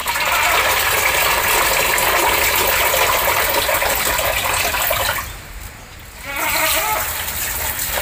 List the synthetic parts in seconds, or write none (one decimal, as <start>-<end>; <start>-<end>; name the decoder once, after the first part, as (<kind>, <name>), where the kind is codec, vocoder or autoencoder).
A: none